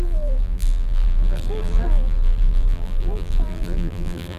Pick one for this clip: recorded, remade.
remade